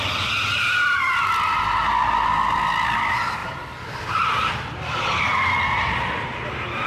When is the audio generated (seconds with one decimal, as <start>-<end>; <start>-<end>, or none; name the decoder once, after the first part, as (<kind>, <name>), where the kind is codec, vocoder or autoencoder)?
none